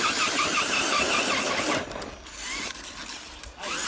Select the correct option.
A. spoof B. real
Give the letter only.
B